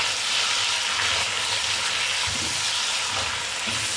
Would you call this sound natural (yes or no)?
yes